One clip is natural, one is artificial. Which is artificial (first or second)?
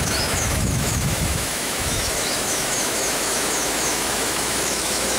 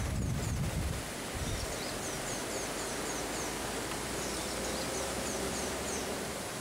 first